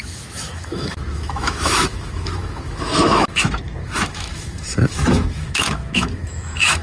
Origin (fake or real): fake